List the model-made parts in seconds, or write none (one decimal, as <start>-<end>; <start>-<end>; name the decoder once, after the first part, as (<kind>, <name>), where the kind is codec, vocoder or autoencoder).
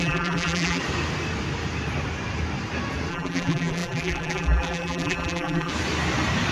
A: 0.0-0.8 (vocoder, BigVGAN v2); 3.1-5.7